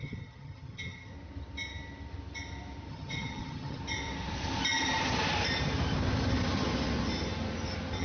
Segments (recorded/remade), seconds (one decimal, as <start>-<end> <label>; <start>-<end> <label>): 0.0-1.1 remade; 1.1-2.9 recorded; 2.9-3.8 remade; 3.8-8.0 recorded